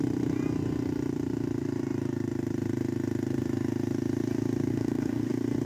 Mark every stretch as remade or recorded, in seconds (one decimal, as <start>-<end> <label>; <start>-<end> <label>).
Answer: 0.0-4.7 recorded; 4.7-5.3 remade; 5.3-5.7 recorded